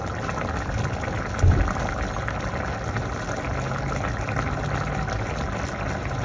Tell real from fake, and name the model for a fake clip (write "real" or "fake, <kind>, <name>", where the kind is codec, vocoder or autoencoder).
real